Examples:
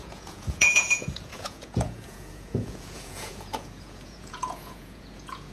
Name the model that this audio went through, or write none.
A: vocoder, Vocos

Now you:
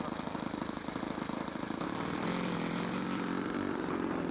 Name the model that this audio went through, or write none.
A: none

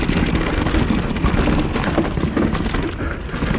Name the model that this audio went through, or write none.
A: none